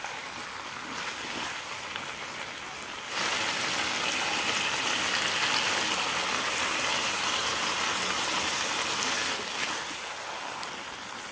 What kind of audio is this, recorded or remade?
recorded